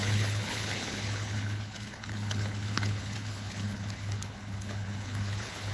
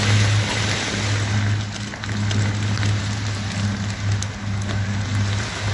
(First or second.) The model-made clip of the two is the first